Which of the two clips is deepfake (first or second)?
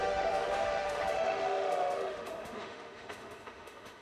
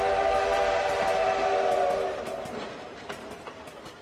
first